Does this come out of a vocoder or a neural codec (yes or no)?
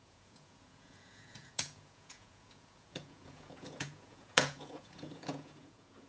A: yes